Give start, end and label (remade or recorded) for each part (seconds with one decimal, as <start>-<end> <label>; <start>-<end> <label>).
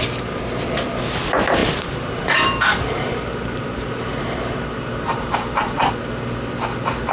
0.0-1.6 recorded; 1.6-5.9 remade; 5.9-7.1 recorded